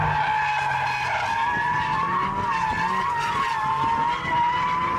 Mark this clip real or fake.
real